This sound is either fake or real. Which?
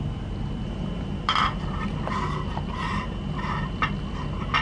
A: real